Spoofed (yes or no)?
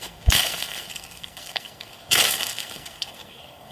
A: yes